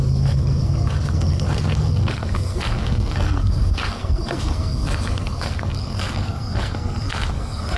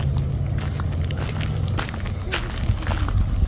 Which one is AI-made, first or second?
first